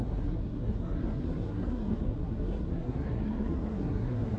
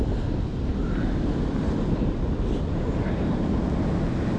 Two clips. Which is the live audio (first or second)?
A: second